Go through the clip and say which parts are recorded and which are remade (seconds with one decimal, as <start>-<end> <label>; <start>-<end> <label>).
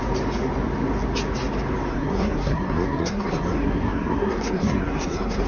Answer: 0.0-1.9 recorded; 1.9-5.5 remade